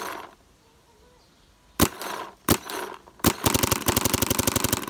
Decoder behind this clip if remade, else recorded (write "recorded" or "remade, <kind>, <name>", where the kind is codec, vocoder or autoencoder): recorded